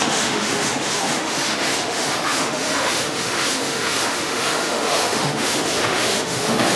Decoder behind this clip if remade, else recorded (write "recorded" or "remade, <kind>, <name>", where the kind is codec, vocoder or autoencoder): remade, autoencoder, DAC-VAE